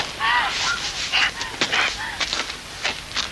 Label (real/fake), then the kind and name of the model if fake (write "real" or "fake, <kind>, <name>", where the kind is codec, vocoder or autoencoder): real